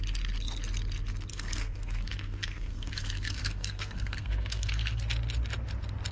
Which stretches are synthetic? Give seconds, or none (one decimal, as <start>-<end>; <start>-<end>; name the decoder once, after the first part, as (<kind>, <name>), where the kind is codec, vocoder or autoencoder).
1.3-5.0 (codec, SNAC)